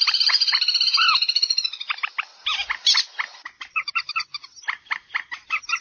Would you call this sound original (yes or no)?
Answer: yes